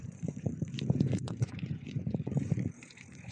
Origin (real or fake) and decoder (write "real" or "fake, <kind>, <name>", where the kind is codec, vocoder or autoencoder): fake, vocoder, Vocos